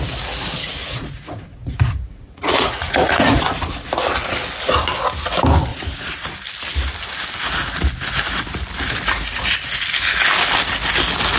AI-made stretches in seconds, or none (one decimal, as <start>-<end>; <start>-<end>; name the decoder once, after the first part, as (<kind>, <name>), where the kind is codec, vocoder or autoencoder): 0.8-3.4 (vocoder, Vocos); 5.7-6.3

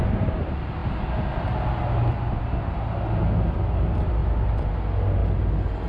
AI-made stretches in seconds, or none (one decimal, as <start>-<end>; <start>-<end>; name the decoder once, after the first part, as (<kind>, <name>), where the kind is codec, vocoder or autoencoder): 4.2-4.7 (vocoder, BigVGAN v2)

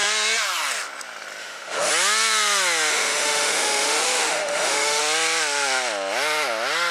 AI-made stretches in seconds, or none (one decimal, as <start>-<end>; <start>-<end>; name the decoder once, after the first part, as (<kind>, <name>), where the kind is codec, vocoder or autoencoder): 1.4-1.9 (autoencoder, DAC-VAE); 2.9-5.0

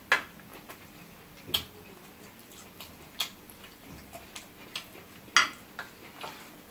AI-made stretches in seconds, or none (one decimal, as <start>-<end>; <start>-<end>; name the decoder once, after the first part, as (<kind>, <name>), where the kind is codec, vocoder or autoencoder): none

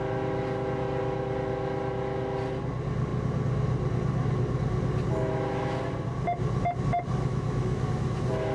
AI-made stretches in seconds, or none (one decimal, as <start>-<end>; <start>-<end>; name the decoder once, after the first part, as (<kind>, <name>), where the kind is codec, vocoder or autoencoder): 7.3-7.9 (autoencoder, DAC-VAE)

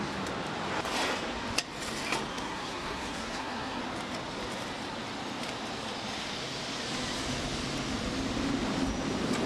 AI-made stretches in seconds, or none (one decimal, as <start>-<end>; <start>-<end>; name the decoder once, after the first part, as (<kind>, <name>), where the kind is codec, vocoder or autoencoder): 2.3-3.8 (codec, SNAC)

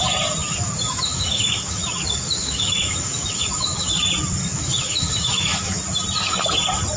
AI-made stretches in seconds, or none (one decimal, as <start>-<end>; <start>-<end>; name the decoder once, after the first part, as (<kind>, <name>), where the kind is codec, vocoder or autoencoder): 0.4-3.9 (autoencoder, DAC-VAE); 4.4-5.8

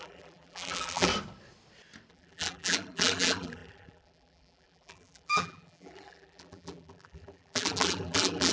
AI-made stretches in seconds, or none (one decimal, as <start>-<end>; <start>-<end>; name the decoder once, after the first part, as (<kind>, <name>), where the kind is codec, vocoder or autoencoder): 0.0-1.1 (vocoder, BigVGAN v2); 2.1-8.5